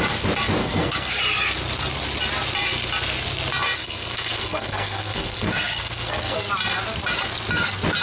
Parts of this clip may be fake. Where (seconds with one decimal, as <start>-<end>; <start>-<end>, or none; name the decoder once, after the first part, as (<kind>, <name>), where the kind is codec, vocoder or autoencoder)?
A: 0.6-1.2 (codec, SNAC); 3.8-6.5